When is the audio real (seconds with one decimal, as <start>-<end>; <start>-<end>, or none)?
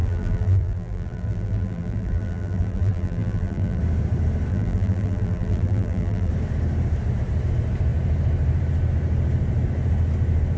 3.8-4.5; 6.3-10.6